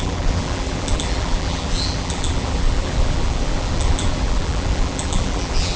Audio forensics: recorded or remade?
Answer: remade